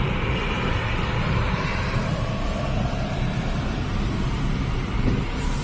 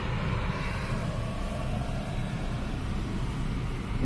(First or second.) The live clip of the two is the second